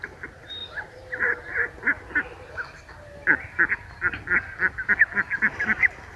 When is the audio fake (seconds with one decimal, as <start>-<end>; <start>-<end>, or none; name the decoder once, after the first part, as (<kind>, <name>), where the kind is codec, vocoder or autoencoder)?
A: none